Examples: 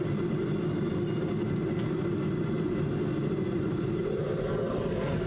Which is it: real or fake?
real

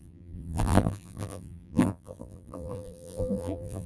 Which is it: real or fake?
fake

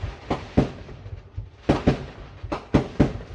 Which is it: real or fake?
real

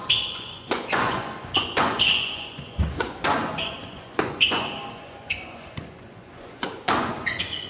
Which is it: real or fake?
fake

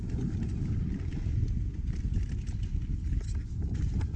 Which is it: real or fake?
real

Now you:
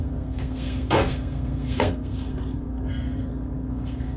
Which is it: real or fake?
fake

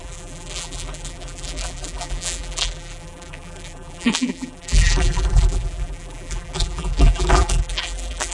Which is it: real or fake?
fake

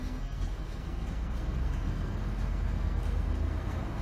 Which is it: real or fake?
fake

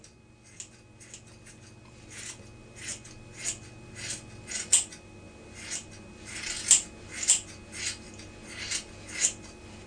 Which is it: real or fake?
real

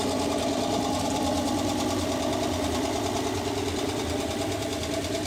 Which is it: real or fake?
fake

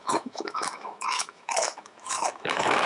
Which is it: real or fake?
fake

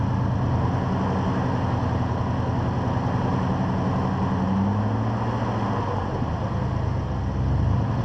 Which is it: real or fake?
real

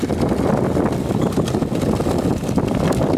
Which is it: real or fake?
real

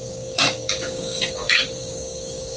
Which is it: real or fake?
fake